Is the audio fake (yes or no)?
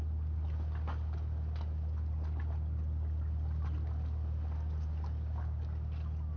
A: no